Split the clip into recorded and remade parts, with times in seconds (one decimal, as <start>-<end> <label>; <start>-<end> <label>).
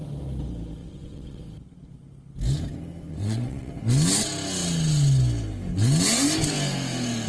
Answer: 0.0-0.8 recorded; 0.8-1.4 remade; 1.4-3.1 recorded; 3.1-3.7 remade; 3.7-7.3 recorded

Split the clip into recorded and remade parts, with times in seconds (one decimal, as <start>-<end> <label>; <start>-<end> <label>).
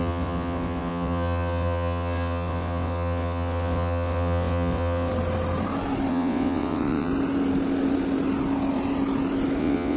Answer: 0.0-5.1 remade; 5.1-6.1 recorded; 6.1-7.1 remade; 7.1-9.6 recorded; 9.6-10.0 remade